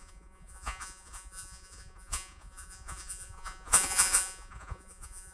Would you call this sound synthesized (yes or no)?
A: yes